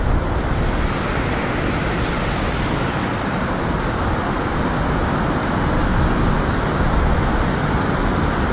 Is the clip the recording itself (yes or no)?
yes